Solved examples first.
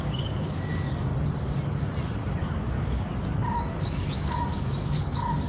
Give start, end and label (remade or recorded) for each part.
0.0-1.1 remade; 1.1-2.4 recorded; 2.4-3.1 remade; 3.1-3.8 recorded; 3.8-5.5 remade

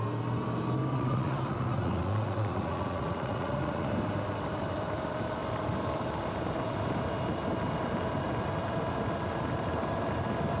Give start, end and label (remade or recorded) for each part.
0.0-0.9 recorded; 0.9-3.9 remade; 3.9-10.6 recorded

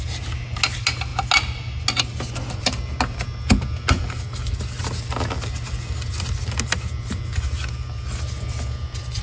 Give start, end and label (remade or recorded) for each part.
0.0-9.2 recorded

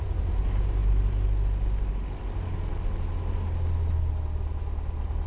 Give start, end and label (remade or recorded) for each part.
0.0-5.3 recorded